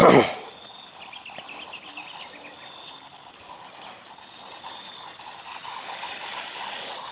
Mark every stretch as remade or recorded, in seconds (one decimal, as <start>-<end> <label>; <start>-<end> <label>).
0.0-7.1 recorded

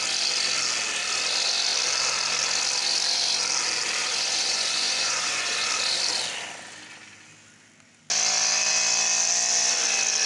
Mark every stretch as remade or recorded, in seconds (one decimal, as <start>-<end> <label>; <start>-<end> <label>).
0.0-4.0 recorded; 4.0-5.7 remade; 5.7-10.3 recorded

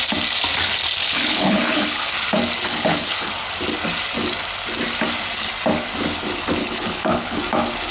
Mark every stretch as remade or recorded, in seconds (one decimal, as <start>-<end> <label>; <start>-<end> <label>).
0.0-1.0 recorded; 1.0-2.1 remade; 2.1-2.7 recorded; 2.7-3.3 remade; 3.3-6.6 recorded; 6.6-7.4 remade; 7.4-7.9 recorded

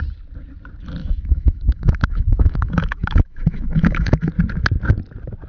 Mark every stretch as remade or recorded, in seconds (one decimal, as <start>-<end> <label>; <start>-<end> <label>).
0.0-1.0 recorded; 1.0-4.3 remade; 4.3-5.5 recorded